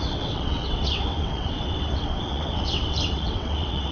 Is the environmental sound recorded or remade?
remade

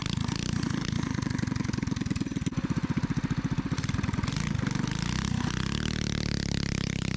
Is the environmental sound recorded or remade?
recorded